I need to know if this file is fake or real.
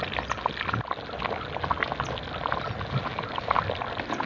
real